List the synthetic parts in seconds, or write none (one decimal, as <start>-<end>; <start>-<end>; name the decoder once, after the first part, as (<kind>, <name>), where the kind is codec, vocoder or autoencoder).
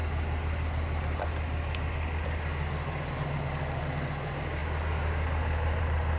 none